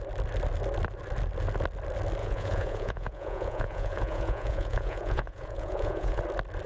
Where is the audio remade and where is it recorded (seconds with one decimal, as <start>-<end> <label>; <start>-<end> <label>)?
0.0-2.2 recorded; 2.2-6.2 remade; 6.2-6.7 recorded